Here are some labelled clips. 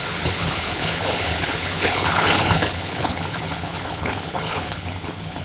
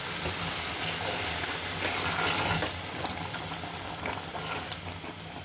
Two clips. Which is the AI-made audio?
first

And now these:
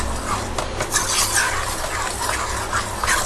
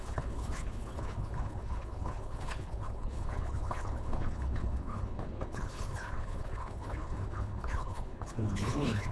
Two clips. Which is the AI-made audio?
second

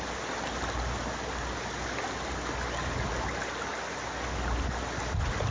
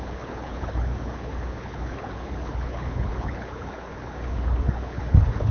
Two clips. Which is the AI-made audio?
second